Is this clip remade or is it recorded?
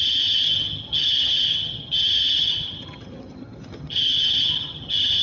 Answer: remade